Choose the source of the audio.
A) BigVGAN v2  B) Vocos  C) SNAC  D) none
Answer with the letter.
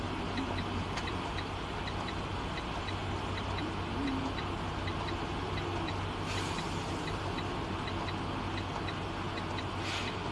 D